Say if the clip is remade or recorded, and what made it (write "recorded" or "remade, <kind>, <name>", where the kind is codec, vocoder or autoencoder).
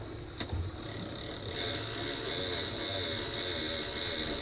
recorded